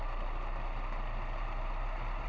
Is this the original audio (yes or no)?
yes